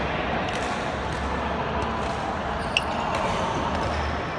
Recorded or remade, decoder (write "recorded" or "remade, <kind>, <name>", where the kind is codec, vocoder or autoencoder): recorded